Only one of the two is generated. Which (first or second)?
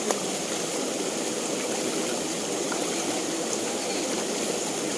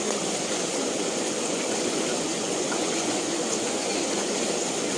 second